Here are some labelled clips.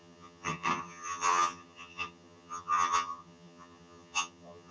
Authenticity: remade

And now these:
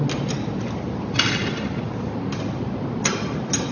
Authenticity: recorded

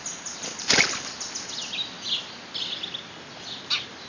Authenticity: recorded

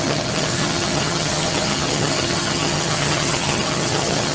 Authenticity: remade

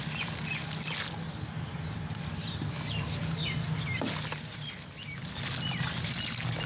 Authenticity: recorded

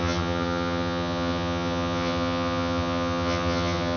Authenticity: remade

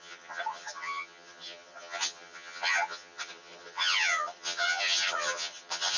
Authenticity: remade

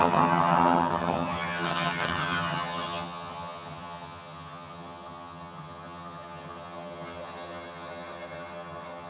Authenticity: remade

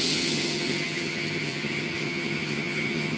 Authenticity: remade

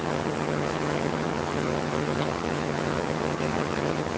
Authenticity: remade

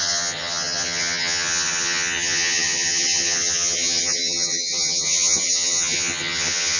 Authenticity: remade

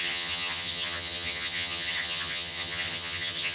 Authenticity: remade